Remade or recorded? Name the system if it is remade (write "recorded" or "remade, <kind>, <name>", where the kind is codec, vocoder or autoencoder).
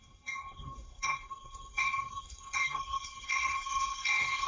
remade, codec, SNAC